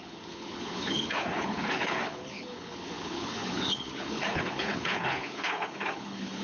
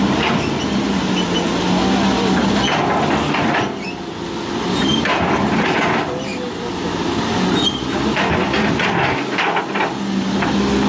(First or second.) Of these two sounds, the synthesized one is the first